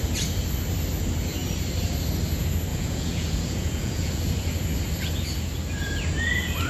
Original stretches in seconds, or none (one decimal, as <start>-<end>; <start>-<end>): 0.0-2.7; 4.2-6.7